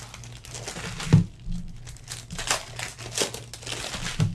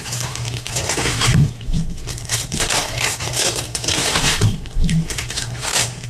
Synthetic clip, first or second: second